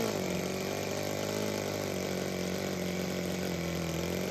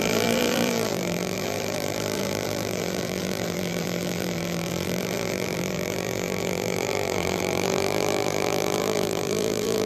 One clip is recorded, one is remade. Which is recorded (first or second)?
first